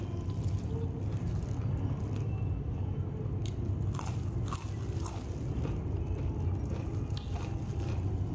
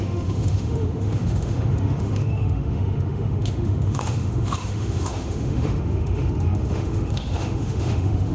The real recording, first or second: first